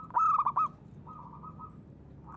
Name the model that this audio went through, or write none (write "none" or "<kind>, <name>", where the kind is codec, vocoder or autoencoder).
none